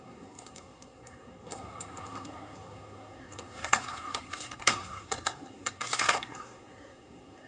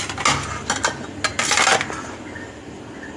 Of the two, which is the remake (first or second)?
first